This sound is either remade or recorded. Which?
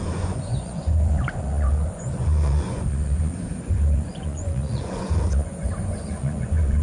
remade